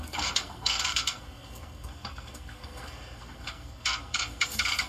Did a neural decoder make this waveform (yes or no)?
yes